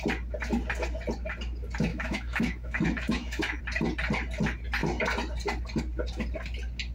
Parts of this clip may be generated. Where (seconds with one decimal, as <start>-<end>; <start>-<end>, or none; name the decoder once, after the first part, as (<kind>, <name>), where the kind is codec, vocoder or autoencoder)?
1.9-3.6 (autoencoder, DAC-VAE)